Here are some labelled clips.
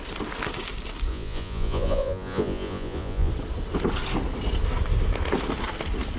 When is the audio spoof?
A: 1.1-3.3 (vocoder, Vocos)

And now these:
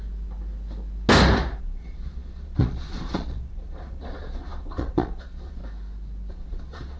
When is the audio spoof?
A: 1.6-5.6 (vocoder, Vocos); 6.3-7.0